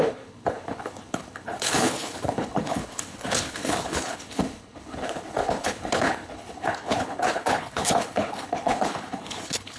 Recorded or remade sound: remade